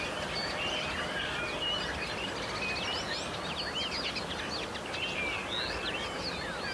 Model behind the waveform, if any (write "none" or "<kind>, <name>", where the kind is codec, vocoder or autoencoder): none